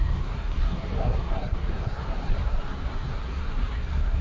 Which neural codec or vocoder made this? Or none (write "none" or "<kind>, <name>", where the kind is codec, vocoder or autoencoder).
codec, SNAC